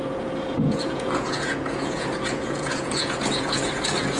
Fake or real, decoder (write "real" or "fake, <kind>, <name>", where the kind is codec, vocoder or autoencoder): fake, vocoder, Vocos